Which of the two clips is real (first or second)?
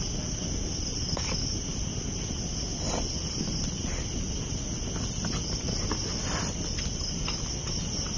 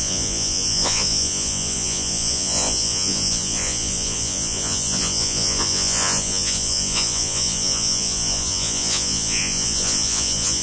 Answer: first